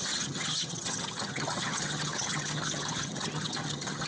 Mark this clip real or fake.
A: fake